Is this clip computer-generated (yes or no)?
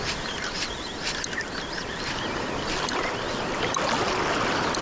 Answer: no